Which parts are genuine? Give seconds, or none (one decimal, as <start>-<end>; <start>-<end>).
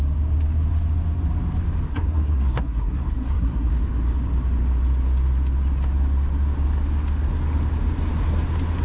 0.0-1.9; 3.7-8.8